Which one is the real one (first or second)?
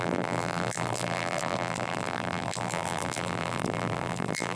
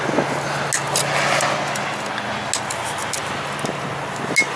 second